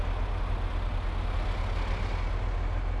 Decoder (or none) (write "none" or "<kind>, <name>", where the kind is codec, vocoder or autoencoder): none